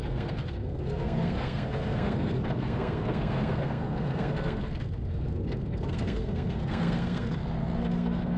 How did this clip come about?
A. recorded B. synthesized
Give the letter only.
B